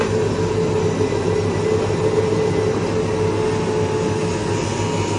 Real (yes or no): yes